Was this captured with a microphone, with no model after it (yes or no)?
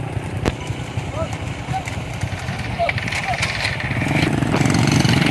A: no